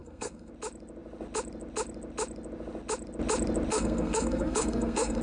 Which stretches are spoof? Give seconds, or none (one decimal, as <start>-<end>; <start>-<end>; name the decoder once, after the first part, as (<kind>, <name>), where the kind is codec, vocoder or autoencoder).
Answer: 0.0-0.5 (codec, SNAC); 3.7-5.2

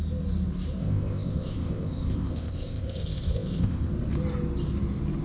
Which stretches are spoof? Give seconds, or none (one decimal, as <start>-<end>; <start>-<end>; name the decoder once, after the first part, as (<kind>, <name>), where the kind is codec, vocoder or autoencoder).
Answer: 0.8-3.9 (codec, ZipCodec)